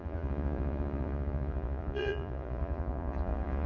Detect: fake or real fake